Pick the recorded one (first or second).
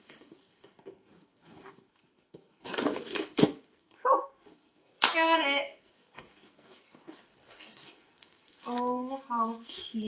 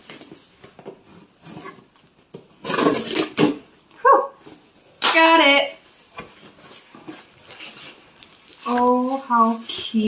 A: second